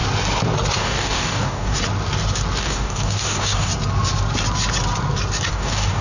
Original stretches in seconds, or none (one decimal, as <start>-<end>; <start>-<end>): 0.0-0.8; 1.8-2.6; 3.7-5.5